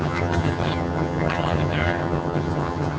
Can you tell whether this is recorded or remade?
remade